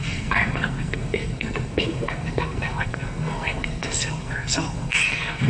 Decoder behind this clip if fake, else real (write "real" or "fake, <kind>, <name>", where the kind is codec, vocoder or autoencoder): fake, codec, SNAC